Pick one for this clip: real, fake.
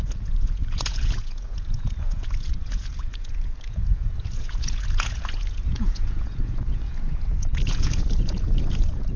fake